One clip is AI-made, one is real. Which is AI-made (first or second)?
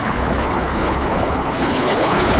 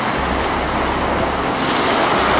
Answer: first